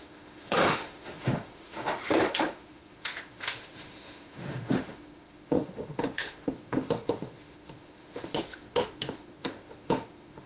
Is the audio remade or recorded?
remade